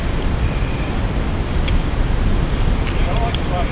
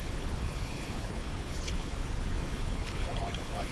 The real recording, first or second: first